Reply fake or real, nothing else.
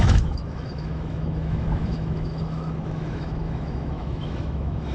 fake